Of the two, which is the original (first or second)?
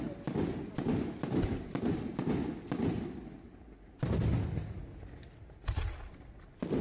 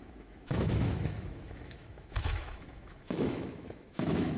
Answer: first